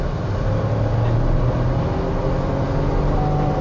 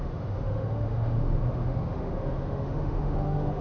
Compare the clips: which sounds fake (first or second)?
second